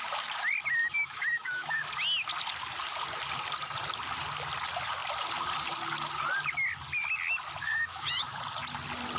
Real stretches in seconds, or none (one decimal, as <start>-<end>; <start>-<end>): 0.0-0.8; 1.8-7.6; 8.4-9.2